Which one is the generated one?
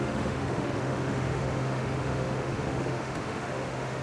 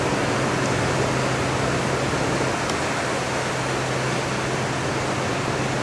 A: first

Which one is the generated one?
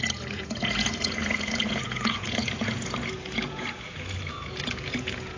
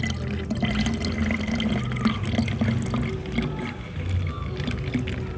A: first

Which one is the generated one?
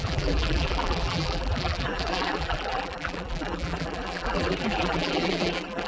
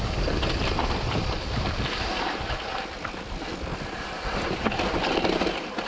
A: first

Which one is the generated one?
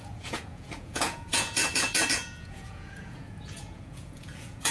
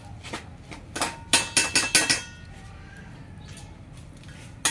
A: first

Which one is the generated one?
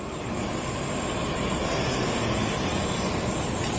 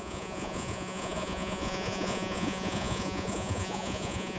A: second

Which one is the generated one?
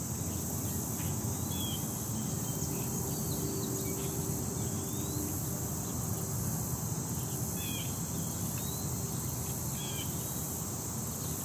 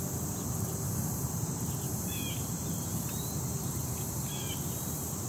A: second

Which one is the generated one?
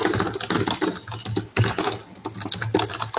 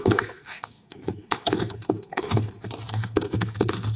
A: second